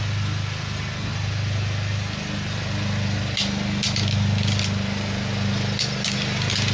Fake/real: real